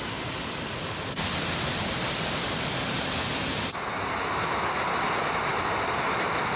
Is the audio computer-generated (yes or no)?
no